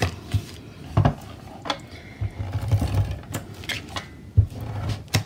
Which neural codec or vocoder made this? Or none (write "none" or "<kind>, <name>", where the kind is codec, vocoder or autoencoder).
none